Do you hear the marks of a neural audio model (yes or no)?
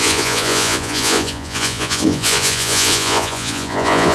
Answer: yes